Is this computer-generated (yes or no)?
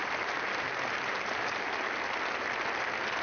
no